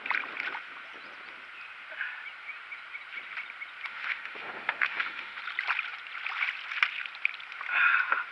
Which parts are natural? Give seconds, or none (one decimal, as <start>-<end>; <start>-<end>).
0.0-3.9; 5.4-8.3